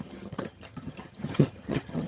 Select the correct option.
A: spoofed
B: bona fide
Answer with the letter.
A